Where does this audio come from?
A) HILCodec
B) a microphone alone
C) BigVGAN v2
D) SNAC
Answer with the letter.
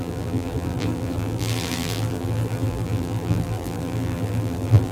C